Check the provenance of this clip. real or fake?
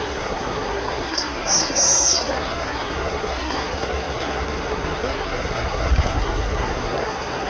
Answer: fake